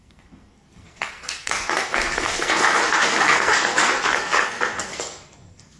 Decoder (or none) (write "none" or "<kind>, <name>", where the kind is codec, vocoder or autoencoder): codec, SNAC